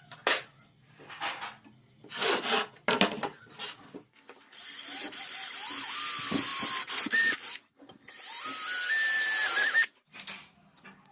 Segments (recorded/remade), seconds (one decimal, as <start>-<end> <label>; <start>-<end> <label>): 0.0-11.1 recorded